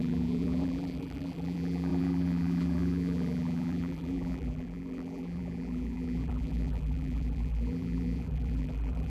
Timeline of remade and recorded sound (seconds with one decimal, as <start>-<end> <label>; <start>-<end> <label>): 0.0-9.1 remade